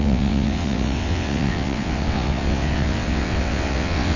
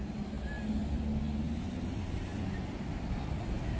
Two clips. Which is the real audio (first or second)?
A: second